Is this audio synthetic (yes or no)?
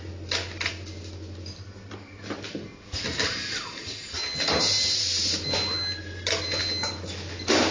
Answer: no